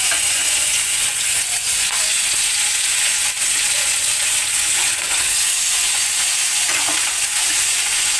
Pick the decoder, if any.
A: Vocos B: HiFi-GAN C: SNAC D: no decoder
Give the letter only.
A